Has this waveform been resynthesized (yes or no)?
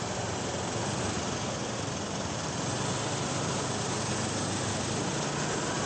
no